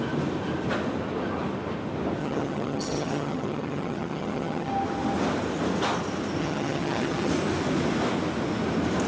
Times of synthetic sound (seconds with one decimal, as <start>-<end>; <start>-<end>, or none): 2.2-4.7; 6.4-7.3